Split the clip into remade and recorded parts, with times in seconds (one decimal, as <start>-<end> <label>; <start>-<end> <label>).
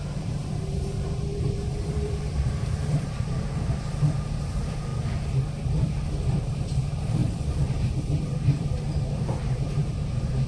0.0-4.9 remade; 4.9-6.4 recorded; 6.4-7.2 remade; 7.2-7.7 recorded; 7.7-9.8 remade; 9.8-10.5 recorded